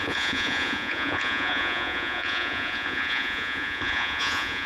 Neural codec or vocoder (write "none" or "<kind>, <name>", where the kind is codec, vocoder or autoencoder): vocoder, Vocos